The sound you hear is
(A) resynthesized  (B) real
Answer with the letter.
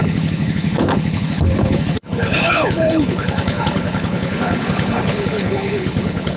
A